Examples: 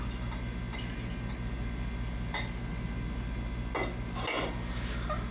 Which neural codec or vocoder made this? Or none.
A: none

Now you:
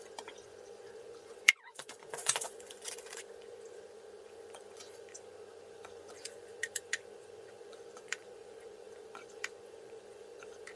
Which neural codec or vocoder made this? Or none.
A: vocoder, Vocos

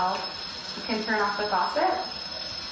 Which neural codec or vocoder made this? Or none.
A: none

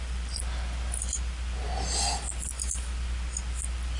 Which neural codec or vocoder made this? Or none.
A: none